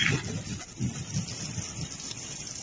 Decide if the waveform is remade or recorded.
recorded